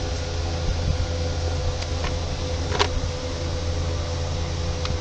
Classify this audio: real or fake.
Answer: real